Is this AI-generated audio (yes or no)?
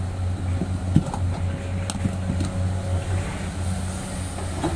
no